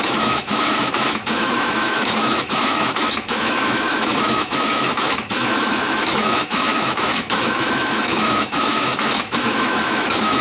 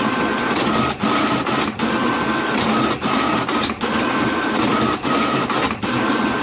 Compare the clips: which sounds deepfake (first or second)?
first